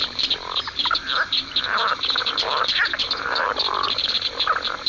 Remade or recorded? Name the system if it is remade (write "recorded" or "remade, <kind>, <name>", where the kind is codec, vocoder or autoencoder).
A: remade, vocoder, BigVGAN v2